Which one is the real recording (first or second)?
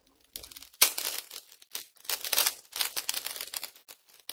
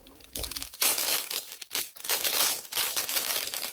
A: first